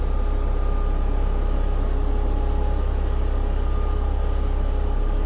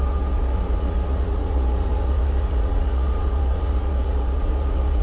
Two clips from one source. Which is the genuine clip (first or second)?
first